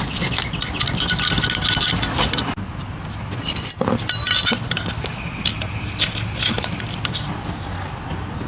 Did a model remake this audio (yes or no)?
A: no